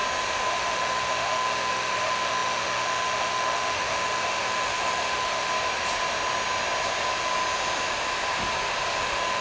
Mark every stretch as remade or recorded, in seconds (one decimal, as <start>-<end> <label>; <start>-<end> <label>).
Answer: 0.0-0.5 recorded; 0.5-5.5 remade; 5.5-9.0 recorded; 9.0-9.4 remade